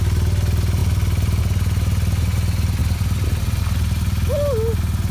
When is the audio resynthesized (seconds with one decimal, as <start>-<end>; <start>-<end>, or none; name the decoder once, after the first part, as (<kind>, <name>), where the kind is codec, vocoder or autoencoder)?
0.8-1.4 (vocoder, BigVGAN v2)